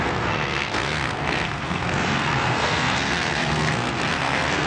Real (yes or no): no